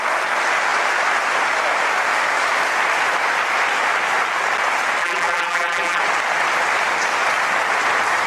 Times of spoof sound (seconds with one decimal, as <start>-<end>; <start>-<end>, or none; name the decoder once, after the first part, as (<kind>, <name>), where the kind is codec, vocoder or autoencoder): 5.0-6.0 (vocoder, BigVGAN v2)